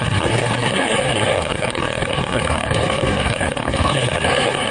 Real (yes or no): no